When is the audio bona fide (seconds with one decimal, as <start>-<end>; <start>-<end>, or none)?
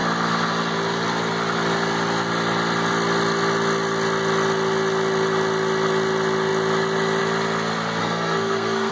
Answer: 0.0-8.0